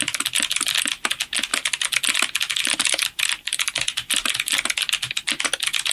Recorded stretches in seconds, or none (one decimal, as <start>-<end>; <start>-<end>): 0.0-5.9